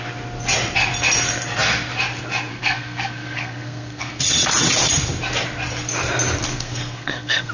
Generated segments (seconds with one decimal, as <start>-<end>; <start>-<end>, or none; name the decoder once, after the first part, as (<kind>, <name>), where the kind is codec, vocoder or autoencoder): 2.5-4.2 (codec, SNAC); 6.5-7.5